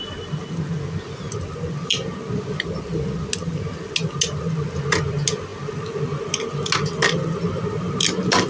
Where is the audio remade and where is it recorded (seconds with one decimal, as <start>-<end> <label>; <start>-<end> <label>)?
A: 0.0-8.5 recorded